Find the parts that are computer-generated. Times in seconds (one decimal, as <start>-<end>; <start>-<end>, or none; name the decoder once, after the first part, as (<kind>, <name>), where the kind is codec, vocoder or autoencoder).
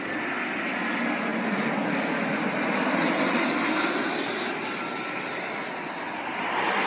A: none